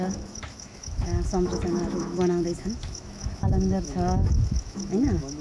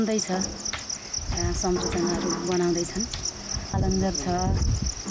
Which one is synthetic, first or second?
first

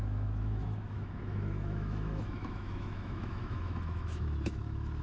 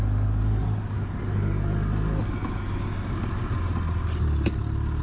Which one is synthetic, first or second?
first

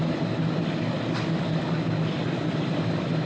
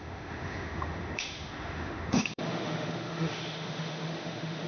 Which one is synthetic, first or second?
second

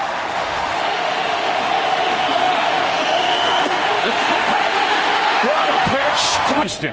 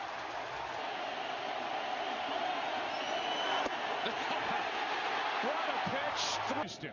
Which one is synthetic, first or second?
first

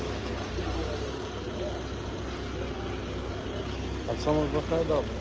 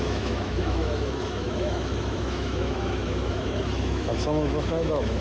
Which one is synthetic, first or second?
second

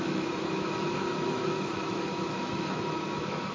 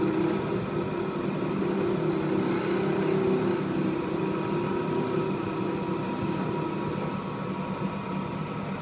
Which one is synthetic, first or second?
first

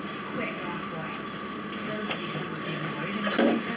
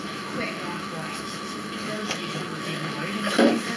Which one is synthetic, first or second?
second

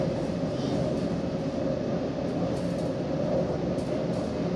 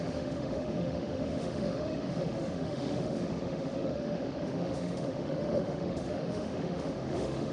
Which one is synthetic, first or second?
second